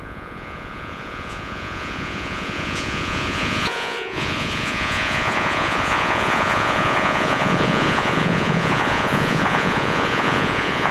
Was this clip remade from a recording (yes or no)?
yes